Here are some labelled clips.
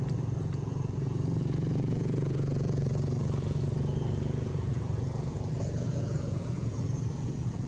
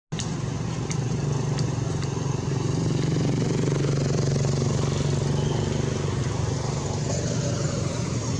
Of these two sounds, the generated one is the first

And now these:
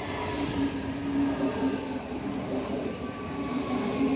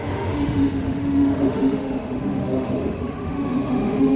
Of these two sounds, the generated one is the second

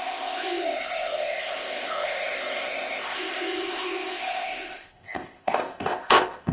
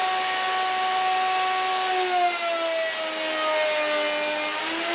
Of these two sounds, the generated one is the first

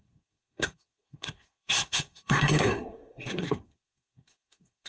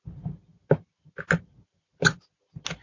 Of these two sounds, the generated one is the first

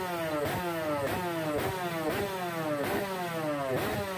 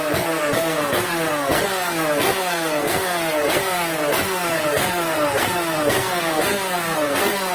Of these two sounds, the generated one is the second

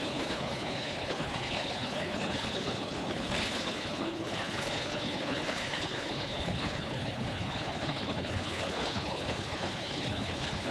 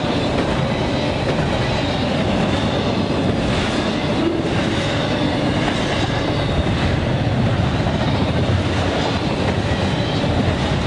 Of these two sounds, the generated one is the first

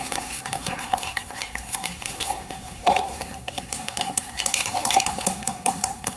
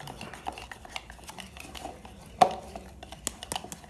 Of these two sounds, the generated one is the first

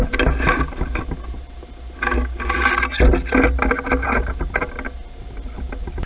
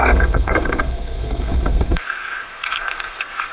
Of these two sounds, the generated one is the second